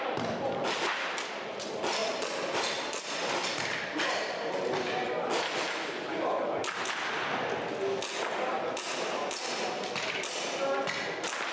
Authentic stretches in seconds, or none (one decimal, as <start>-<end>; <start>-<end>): 0.0-11.5